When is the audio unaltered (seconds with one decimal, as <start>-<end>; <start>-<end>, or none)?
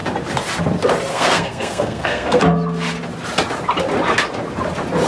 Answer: 0.0-1.1; 2.4-5.1